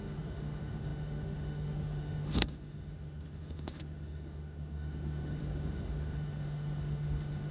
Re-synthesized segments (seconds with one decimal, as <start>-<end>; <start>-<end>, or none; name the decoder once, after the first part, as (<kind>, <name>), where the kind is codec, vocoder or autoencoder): 0.0-7.5 (autoencoder, DAC-VAE)

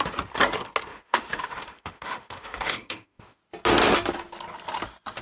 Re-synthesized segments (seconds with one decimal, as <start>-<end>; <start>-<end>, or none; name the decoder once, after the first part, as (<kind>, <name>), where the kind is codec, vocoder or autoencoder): 0.9-3.4 (autoencoder, DAC-VAE)

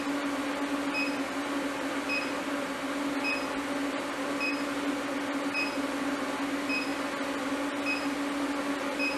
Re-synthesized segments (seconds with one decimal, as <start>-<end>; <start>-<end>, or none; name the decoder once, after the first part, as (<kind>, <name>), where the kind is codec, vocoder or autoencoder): none